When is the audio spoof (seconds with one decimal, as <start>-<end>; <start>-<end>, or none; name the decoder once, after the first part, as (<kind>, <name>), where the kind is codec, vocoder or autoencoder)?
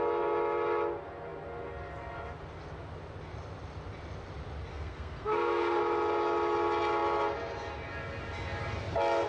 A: 4.7-5.8 (codec, SNAC)